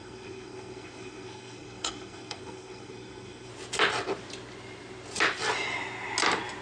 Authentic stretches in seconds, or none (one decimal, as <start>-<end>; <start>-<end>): 3.5-6.6